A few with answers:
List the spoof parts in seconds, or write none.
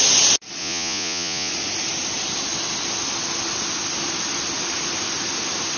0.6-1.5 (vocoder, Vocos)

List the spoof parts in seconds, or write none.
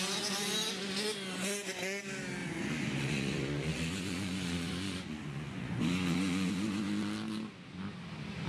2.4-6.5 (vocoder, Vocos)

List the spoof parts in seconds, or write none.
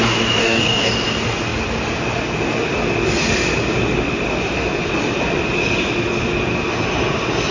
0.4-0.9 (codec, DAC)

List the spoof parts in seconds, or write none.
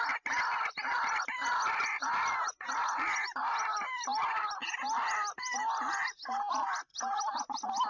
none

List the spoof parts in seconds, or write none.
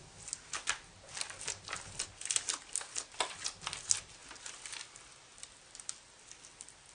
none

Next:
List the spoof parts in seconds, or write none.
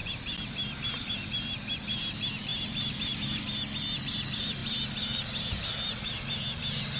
0.0-1.3 (vocoder, BigVGAN v2)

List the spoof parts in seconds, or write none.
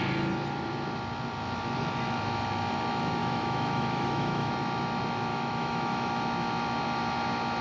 3.2-4.5 (autoencoder, DAC-VAE); 5.3-6.1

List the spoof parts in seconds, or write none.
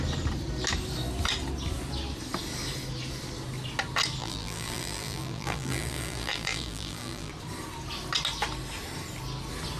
4.2-7.3 (vocoder, BigVGAN v2)